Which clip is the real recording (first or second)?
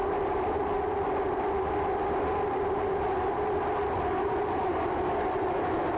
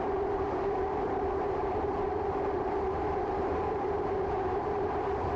first